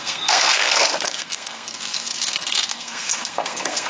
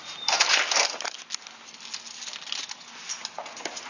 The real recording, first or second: second